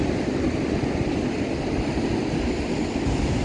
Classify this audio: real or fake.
real